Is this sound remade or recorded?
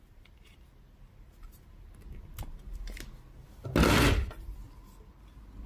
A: recorded